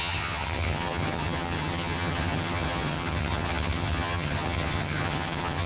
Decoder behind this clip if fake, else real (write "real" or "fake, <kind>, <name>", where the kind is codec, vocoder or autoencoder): fake, vocoder, HiFi-GAN